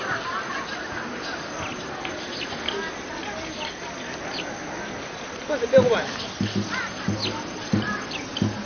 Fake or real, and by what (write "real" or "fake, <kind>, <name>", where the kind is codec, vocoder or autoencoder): real